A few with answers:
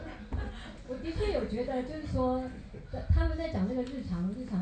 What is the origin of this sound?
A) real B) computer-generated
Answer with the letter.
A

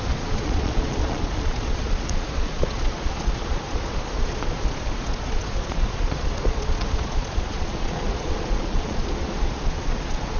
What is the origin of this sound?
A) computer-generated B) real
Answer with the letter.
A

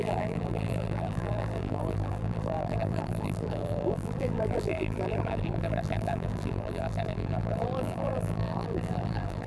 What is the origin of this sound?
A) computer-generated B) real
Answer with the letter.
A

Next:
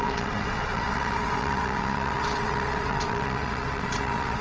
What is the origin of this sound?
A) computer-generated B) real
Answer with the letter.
A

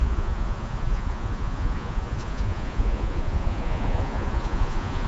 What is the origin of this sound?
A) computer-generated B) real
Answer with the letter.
A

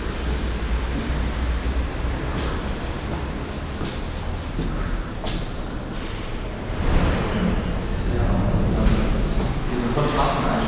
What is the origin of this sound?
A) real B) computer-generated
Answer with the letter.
A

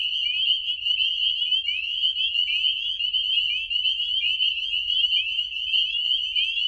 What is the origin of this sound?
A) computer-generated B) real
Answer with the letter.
B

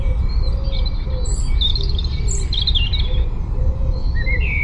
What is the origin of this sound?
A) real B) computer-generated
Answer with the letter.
A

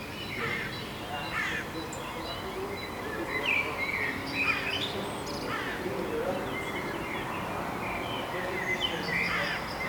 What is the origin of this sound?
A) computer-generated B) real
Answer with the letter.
B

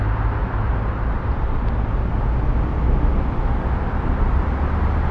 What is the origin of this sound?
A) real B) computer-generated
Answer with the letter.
A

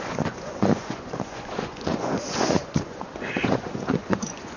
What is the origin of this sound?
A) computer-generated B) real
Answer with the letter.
A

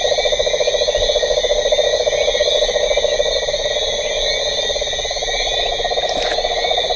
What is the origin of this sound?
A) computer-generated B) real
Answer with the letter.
B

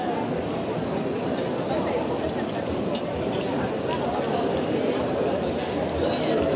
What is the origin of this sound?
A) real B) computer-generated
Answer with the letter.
A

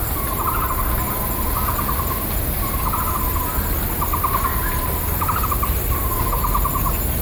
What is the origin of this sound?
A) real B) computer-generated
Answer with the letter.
A